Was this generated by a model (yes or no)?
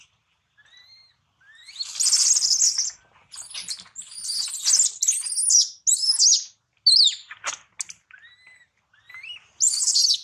no